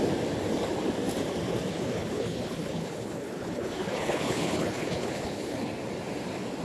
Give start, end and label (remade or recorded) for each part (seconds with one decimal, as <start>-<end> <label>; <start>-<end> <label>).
0.0-1.7 recorded; 1.7-5.7 remade; 5.7-6.6 recorded